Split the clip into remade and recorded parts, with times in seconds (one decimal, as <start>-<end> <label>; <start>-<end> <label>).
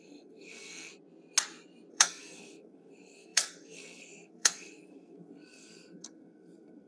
0.0-0.9 remade; 0.9-1.9 recorded; 1.9-6.9 remade